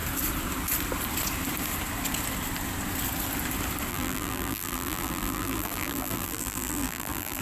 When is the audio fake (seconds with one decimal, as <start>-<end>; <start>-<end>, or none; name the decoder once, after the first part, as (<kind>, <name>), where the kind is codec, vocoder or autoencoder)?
3.9-7.4 (vocoder, BigVGAN v2)